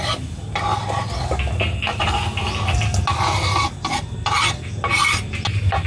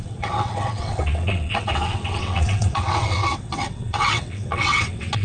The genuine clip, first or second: first